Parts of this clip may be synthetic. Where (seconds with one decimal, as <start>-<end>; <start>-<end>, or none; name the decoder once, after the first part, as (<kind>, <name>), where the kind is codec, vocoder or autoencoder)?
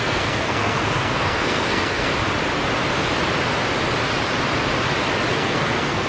0.0-2.1 (codec, SNAC); 5.3-6.1